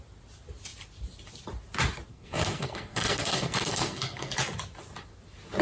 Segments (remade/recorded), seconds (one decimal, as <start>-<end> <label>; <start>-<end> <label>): 0.0-2.1 recorded; 2.1-4.3 remade; 4.3-5.6 recorded